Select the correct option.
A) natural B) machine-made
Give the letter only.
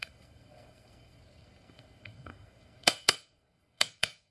B